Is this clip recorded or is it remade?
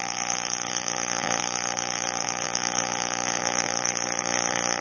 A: remade